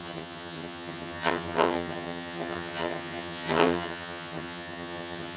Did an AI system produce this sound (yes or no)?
yes